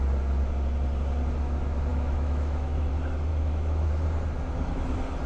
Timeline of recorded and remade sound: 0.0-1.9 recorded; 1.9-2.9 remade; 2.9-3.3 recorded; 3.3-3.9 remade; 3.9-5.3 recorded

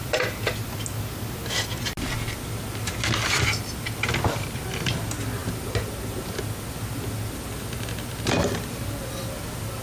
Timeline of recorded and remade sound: 0.0-9.8 recorded

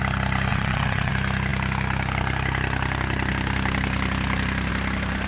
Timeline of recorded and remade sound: 0.0-0.5 recorded; 0.5-1.1 remade; 1.1-5.3 recorded

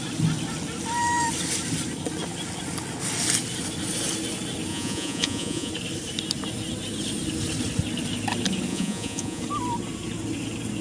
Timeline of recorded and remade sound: 0.0-4.7 recorded; 4.7-5.7 remade; 5.7-8.7 recorded; 8.7-9.4 remade; 9.4-10.8 recorded

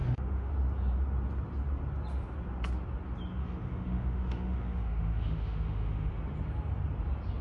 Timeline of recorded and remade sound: 0.0-0.5 remade; 0.5-3.4 recorded; 3.4-6.1 remade; 6.1-7.4 recorded

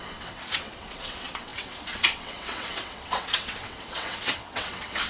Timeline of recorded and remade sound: 0.0-5.1 remade

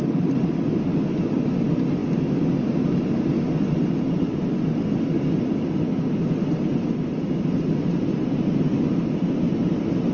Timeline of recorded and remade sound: 0.0-10.1 recorded

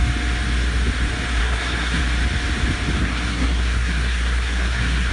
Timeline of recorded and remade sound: 0.0-1.4 recorded; 1.4-2.0 remade; 2.0-3.0 recorded; 3.0-5.1 remade